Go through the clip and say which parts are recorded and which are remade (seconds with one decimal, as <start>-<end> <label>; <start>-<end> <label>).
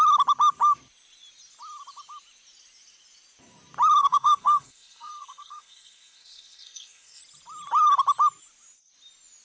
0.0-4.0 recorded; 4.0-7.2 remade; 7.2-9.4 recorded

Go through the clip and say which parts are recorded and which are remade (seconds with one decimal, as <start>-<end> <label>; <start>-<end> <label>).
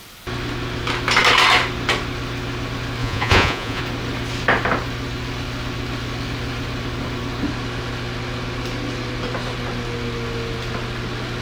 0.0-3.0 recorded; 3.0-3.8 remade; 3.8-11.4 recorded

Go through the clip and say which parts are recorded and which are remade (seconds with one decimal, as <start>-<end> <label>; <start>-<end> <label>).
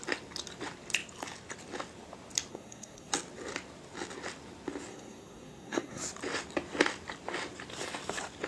0.0-2.5 recorded; 2.5-3.1 remade; 3.1-4.9 recorded; 4.9-6.0 remade; 6.0-8.5 recorded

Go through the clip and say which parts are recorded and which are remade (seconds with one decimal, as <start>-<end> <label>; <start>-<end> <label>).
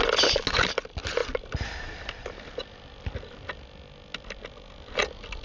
0.0-5.4 recorded